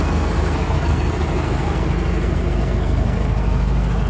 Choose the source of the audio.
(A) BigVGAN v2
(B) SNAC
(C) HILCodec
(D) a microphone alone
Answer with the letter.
B